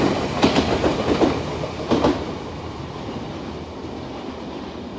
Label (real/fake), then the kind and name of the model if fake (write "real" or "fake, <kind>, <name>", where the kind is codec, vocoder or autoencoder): fake, vocoder, BigVGAN v2